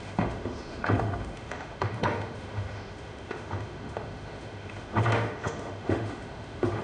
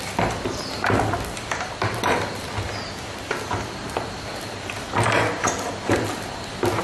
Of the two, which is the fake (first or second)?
first